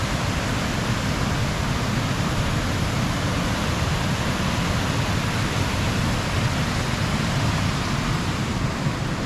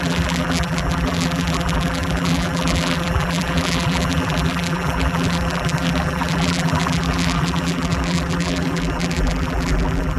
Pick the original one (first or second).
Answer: first